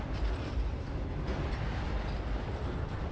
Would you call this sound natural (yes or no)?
yes